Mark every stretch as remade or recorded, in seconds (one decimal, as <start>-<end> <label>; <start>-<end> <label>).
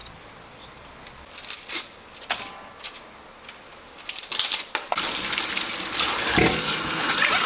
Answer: 0.0-7.5 recorded